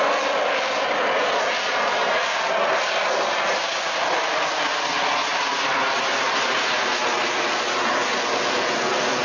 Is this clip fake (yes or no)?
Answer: no